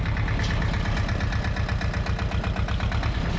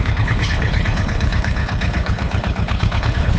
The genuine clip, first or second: first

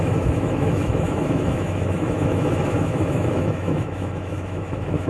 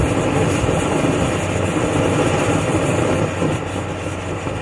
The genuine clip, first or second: second